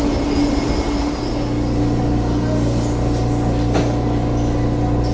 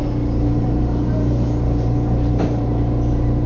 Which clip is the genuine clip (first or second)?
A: first